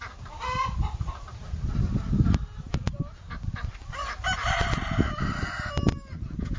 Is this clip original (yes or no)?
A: yes